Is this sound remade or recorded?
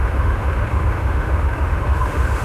remade